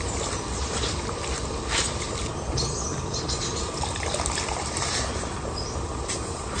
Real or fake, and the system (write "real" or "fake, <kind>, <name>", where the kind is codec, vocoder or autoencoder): fake, vocoder, BigVGAN v2